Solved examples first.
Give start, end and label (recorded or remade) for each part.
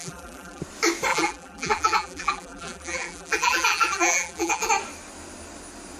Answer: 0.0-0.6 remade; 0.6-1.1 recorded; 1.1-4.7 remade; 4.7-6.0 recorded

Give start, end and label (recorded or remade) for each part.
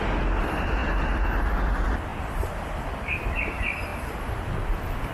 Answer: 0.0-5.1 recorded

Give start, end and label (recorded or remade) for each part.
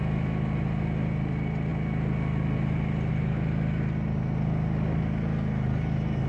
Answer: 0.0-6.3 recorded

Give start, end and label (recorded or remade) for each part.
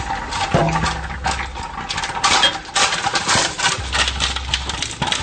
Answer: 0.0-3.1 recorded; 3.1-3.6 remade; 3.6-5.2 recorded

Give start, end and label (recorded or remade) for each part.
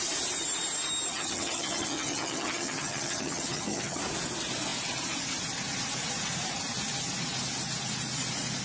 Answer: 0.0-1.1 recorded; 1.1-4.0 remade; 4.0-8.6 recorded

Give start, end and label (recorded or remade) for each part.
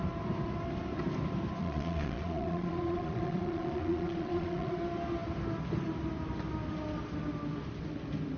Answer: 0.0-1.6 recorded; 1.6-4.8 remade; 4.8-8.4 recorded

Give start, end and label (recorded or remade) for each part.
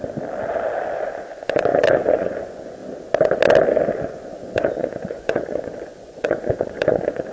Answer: 0.0-0.8 recorded; 0.8-2.8 remade; 2.8-3.9 recorded; 3.9-7.3 remade